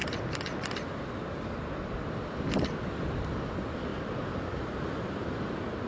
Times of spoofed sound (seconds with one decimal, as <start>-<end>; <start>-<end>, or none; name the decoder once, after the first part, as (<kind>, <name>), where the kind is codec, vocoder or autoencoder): 0.0-3.5 (vocoder, BigVGAN v2); 3.9-5.1